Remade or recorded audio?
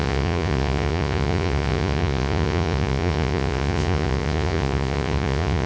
remade